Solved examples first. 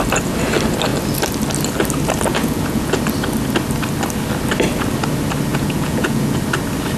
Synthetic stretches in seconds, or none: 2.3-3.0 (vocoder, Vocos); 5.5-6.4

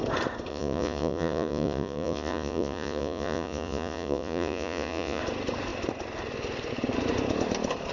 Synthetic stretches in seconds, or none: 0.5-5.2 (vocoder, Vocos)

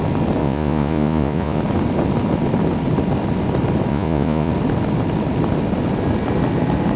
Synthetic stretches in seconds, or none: 0.4-1.6 (vocoder, Vocos); 3.9-4.5

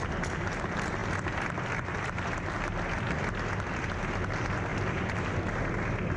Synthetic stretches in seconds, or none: none

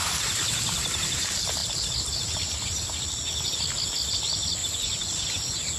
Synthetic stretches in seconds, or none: 4.6-5.8 (vocoder, Vocos)

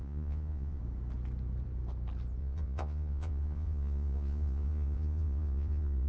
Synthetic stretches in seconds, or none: 0.0-0.8 (vocoder, Vocos); 2.4-6.1